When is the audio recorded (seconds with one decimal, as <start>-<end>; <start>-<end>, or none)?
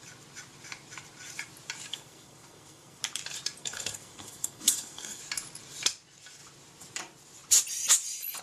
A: 0.0-1.9; 3.0-3.6; 5.2-8.4